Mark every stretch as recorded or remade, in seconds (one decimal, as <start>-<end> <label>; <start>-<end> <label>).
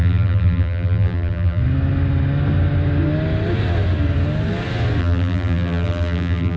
0.0-1.6 remade; 1.6-5.0 recorded; 5.0-6.6 remade